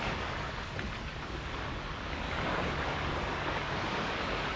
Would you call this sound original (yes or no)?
no